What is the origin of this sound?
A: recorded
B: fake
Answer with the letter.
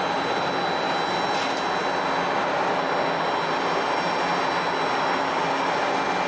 A